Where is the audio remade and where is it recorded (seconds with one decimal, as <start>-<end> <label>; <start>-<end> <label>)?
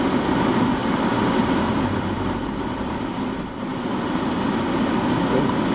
0.0-0.8 recorded; 0.8-3.0 remade; 3.0-5.7 recorded